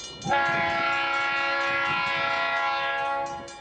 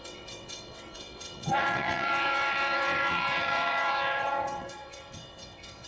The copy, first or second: second